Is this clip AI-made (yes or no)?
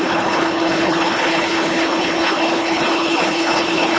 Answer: yes